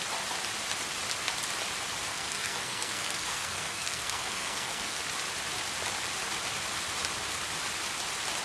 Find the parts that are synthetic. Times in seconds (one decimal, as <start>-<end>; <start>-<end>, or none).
2.1-5.0